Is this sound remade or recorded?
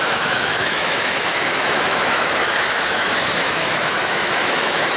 remade